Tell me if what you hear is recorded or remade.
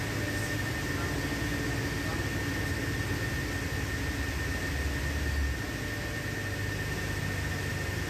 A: recorded